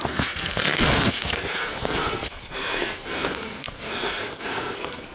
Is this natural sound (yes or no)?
no